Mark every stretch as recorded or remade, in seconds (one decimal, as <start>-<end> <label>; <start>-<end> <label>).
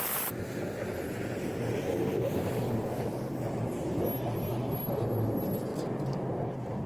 0.0-6.9 recorded